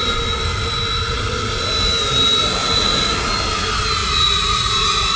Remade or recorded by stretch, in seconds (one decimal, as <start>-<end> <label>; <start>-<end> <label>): 0.0-2.6 recorded; 2.6-3.4 remade; 3.4-4.0 recorded; 4.0-4.7 remade; 4.7-5.2 recorded